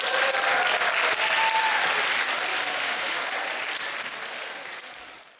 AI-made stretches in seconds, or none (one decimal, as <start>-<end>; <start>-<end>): 2.5-3.3